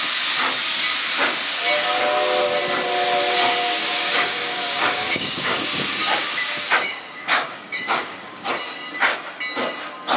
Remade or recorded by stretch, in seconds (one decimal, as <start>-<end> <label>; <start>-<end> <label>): 0.0-3.8 recorded; 3.8-8.5 remade; 8.5-10.2 recorded